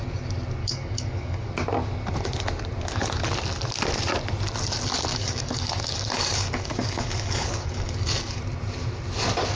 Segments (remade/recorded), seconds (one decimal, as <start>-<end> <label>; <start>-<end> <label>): 0.0-0.6 recorded; 0.6-1.5 remade; 1.5-5.1 recorded; 5.1-8.4 remade; 8.4-9.6 recorded